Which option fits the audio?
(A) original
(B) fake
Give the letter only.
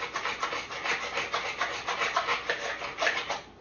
A